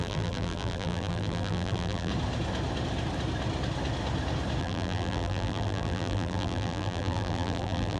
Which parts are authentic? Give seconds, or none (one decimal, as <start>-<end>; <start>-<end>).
2.1-4.6